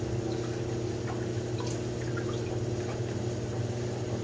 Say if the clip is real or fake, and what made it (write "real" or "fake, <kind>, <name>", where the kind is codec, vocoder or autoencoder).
real